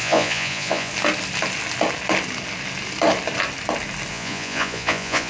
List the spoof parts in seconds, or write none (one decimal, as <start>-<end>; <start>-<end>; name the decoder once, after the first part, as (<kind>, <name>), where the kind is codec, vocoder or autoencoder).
0.0-0.9 (vocoder, Vocos); 4.1-5.3